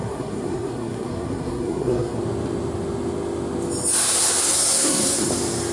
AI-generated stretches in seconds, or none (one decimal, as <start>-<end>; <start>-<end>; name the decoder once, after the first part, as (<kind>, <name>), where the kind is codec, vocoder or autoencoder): 0.0-2.2 (codec, SNAC); 4.4-5.3

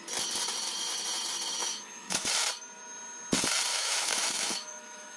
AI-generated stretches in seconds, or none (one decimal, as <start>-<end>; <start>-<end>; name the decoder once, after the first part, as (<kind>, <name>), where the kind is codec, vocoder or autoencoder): 1.6-2.3 (autoencoder, DAC-VAE); 3.7-5.2

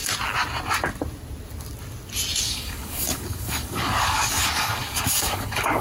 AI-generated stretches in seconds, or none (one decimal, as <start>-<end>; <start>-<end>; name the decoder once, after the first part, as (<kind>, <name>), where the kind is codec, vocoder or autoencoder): 2.4-5.8 (codec, DAC)

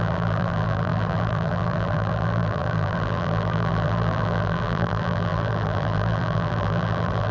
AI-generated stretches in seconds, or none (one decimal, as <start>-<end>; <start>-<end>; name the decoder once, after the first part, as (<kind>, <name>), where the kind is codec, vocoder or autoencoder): 0.0-7.3 (vocoder, BigVGAN v2)

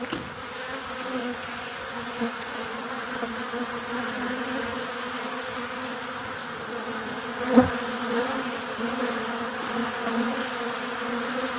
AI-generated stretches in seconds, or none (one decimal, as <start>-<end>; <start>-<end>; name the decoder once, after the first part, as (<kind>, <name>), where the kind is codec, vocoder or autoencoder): 1.2-3.1 (vocoder, Vocos)

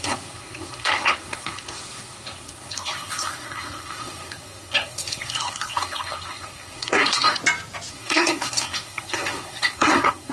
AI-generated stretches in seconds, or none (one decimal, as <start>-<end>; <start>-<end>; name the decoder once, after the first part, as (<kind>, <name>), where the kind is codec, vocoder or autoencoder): 0.0-7.4 (codec, SNAC); 7.9-10.3